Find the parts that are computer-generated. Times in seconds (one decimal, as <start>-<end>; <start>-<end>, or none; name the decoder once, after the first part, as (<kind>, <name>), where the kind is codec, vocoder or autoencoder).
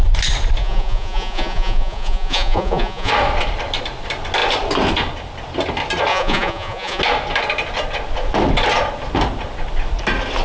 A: 0.6-3.1 (vocoder, Vocos); 6.1-7.0